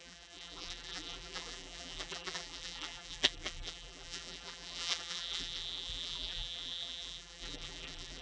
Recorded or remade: remade